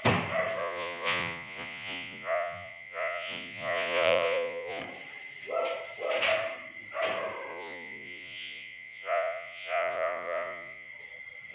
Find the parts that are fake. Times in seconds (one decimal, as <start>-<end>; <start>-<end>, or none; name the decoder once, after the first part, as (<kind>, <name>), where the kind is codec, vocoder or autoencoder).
0.6-4.8 (vocoder, Vocos); 7.5-10.9